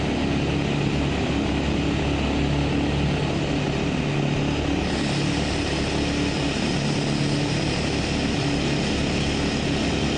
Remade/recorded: recorded